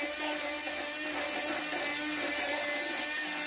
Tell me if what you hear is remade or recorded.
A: recorded